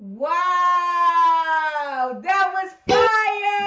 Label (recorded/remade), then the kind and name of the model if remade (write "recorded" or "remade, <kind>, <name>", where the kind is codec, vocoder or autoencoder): recorded